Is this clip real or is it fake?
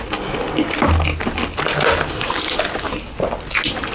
real